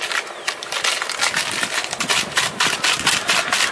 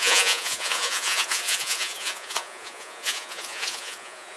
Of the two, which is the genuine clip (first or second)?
first